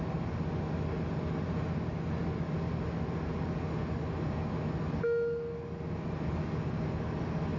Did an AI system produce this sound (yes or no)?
no